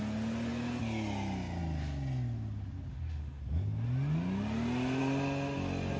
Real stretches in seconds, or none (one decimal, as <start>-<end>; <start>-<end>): 0.0-2.9; 3.4-6.0